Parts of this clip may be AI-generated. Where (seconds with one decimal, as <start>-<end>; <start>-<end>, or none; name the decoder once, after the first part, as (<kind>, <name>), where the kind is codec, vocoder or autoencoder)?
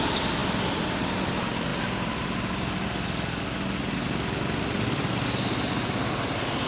none